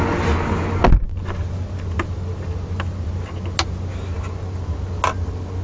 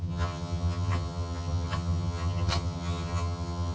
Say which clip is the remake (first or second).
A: second